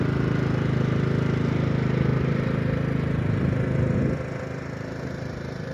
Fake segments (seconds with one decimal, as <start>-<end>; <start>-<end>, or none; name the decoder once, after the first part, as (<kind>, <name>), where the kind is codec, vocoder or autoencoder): none